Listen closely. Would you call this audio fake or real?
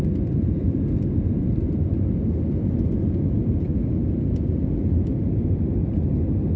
real